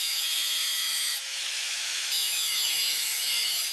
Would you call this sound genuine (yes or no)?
no